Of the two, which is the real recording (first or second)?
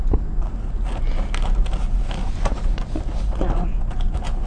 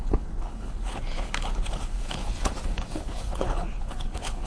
first